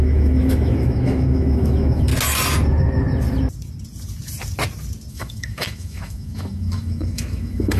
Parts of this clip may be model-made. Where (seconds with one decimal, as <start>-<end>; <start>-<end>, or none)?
0.0-2.1; 5.1-7.8